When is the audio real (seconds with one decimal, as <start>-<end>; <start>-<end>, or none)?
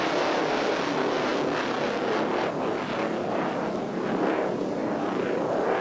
0.0-5.8